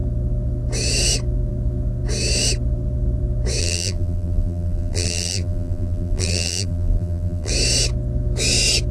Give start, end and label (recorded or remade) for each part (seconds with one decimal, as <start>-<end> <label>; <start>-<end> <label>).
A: 0.0-3.6 recorded; 3.6-7.5 remade; 7.5-8.9 recorded